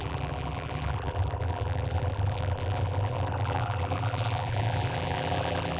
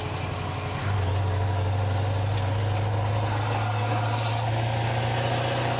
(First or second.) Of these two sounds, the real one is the second